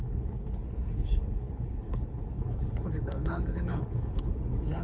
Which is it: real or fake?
fake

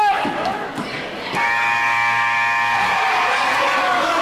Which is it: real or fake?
fake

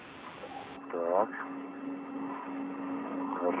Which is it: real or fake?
real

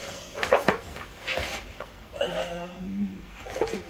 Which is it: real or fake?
fake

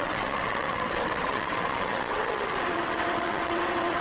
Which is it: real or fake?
fake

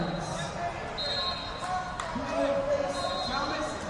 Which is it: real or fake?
real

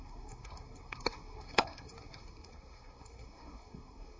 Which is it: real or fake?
fake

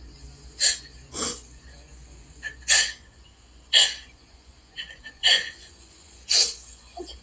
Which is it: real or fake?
fake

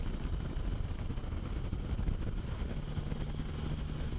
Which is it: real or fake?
real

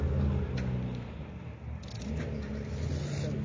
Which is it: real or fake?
real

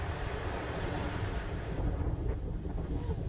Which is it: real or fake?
fake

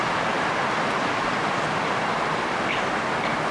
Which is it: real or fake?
real